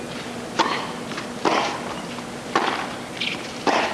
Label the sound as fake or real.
real